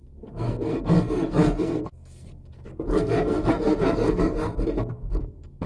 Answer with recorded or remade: remade